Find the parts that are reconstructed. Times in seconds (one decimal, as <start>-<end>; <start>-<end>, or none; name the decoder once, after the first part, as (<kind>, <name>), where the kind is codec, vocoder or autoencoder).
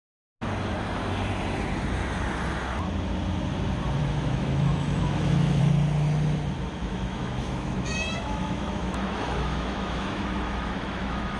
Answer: 4.0-5.6 (autoencoder, DAC-VAE); 6.8-11.4